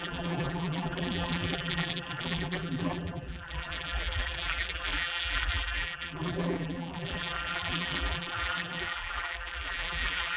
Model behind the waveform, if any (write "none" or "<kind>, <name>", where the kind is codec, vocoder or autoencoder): vocoder, BigVGAN v2